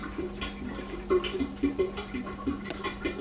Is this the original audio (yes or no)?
yes